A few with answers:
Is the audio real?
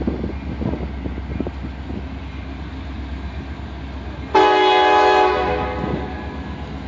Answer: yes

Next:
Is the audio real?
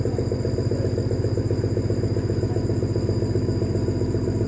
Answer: yes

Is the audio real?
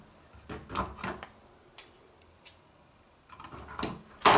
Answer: yes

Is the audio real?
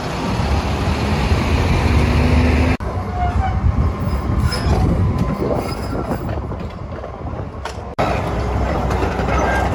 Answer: yes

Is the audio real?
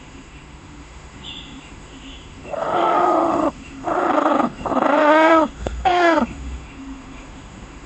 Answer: no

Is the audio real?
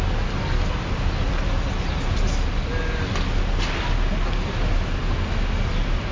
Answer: yes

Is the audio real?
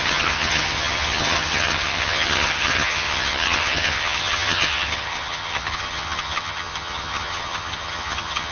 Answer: no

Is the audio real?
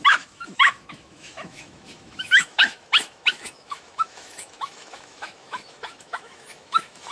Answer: no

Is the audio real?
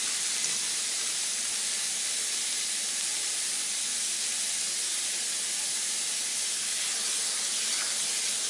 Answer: yes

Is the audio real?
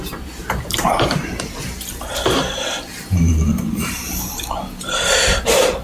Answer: no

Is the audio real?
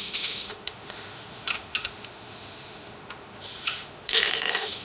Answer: no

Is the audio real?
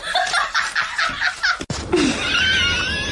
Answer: yes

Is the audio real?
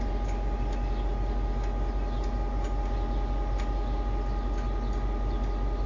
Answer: yes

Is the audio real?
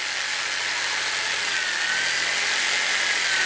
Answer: yes